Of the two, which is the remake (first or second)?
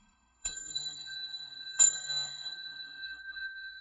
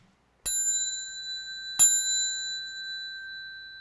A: first